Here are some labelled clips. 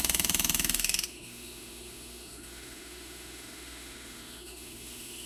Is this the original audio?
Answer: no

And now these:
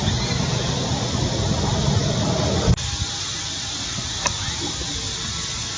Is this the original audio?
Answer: yes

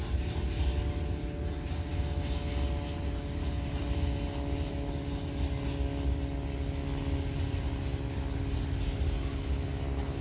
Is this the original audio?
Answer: yes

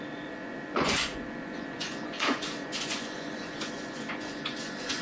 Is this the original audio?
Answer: no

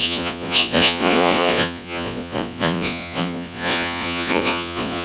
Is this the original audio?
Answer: no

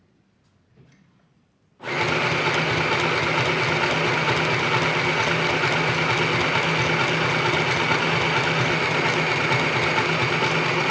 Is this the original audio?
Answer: yes